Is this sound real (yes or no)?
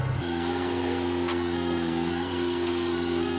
no